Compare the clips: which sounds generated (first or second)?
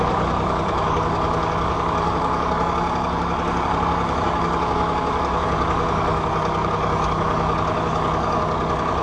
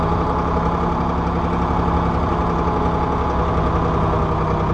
first